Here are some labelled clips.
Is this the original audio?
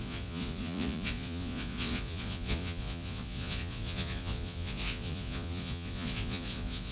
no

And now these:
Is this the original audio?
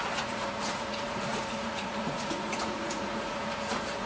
no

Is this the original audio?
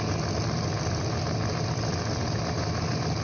yes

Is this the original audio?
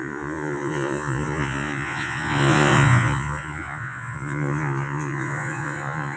no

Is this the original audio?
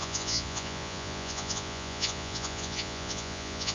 no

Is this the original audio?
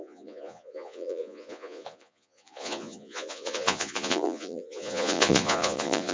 no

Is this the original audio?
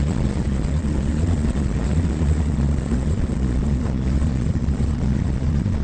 no